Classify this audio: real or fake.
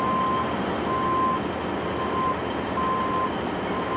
real